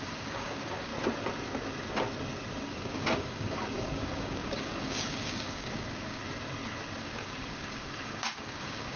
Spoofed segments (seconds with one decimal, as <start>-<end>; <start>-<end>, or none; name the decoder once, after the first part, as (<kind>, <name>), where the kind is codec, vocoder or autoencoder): 0.0-0.9 (codec, DAC); 2.7-6.2; 7.0-9.0